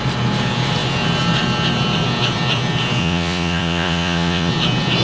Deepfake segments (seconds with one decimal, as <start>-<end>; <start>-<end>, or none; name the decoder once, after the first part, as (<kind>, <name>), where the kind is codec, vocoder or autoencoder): 3.0-4.5 (vocoder, Vocos)